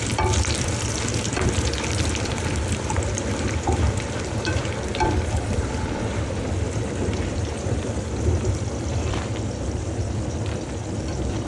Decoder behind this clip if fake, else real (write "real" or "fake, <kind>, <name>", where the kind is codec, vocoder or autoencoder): fake, vocoder, BigVGAN v2